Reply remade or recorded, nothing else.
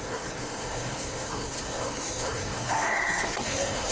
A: remade